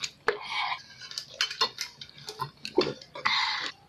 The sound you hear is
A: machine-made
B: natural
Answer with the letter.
B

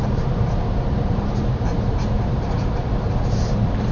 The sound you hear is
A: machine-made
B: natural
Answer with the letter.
A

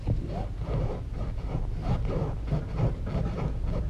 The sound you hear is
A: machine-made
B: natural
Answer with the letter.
B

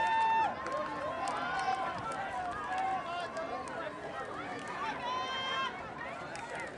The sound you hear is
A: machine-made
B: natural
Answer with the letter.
B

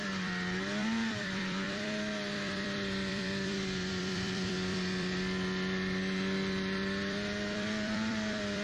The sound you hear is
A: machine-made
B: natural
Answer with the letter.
A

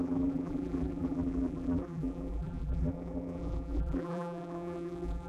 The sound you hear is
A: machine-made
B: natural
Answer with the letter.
A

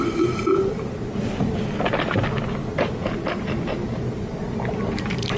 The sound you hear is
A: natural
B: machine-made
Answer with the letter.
A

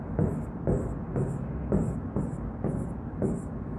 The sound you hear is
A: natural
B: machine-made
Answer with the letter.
A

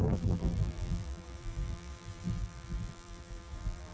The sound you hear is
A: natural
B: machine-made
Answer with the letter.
B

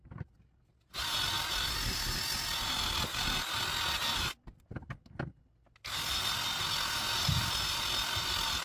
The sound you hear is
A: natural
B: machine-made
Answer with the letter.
A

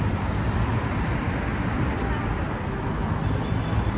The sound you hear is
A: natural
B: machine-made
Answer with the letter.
A